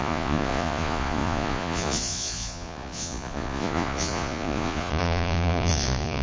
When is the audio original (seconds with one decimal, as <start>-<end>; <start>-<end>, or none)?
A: none